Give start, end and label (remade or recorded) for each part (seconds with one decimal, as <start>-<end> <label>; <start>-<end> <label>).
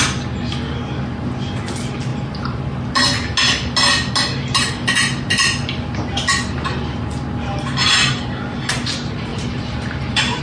0.0-9.3 recorded; 9.3-10.4 remade